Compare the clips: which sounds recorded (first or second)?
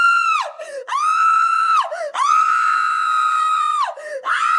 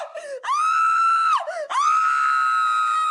second